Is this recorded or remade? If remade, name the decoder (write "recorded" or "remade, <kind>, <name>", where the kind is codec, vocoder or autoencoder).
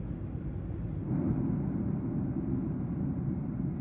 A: recorded